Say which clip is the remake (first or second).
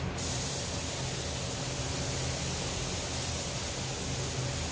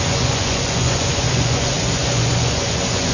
second